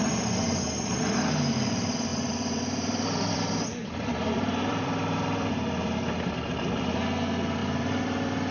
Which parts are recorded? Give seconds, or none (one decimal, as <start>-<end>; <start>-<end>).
0.0-2.1; 6.3-7.6